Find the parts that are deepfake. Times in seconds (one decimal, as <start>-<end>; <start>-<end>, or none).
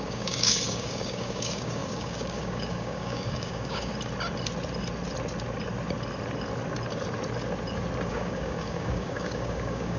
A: 0.0-3.9; 8.1-10.0